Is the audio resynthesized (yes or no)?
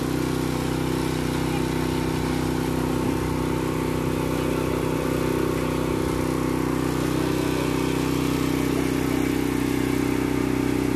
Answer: no